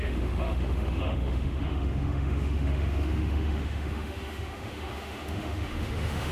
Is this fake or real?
fake